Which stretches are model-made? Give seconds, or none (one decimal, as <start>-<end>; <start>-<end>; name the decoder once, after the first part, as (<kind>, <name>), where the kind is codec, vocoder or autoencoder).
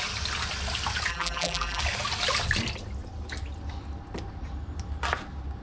1.1-1.8 (vocoder, BigVGAN v2)